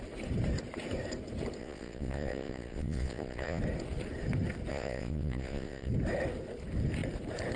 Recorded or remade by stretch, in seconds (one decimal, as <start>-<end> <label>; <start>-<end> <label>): 0.0-1.6 recorded; 1.6-3.6 remade; 3.6-4.7 recorded; 4.7-5.9 remade; 5.9-7.6 recorded